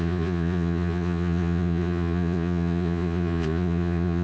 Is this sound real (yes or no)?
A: no